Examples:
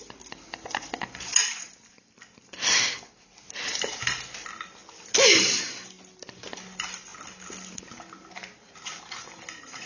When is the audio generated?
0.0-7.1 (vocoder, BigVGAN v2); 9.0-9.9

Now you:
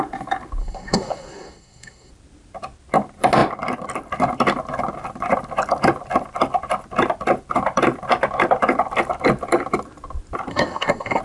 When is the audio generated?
0.6-2.1 (codec, SNAC); 10.5-11.2

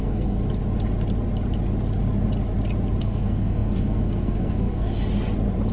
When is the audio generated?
0.0-0.4 (codec, SNAC); 3.0-4.9

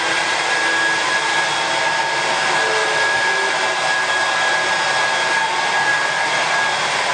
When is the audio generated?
2.8-3.5 (autoencoder, DAC-VAE)